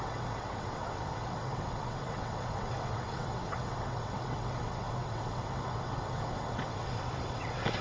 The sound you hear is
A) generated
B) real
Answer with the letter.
A